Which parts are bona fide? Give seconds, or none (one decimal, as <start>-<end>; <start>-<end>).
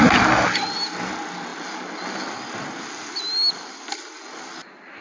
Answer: 0.0-5.0